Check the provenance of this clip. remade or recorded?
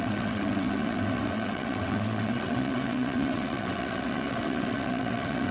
remade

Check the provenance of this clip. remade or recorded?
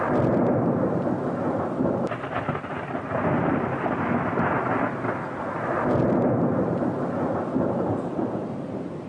recorded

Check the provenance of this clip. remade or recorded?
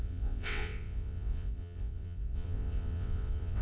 remade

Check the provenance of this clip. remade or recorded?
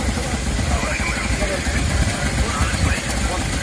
recorded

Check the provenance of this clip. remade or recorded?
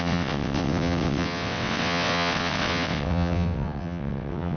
remade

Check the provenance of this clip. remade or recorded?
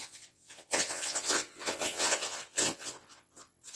remade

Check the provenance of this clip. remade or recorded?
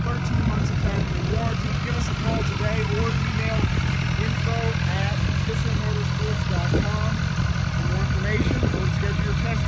recorded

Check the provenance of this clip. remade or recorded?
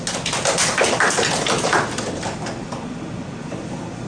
recorded